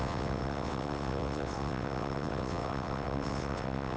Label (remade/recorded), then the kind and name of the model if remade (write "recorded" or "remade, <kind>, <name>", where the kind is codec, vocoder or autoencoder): remade, vocoder, WaveNeXt